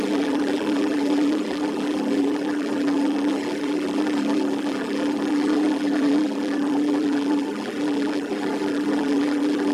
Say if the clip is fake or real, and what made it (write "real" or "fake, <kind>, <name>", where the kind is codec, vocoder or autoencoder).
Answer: fake, vocoder, BigVGAN v2